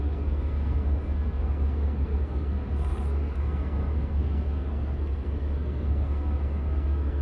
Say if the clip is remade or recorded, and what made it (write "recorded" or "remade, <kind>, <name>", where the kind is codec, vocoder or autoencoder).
remade, codec, SNAC